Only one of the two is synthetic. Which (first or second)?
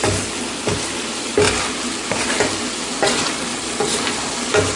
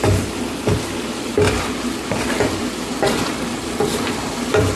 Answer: second